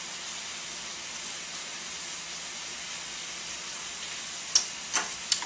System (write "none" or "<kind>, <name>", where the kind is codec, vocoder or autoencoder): none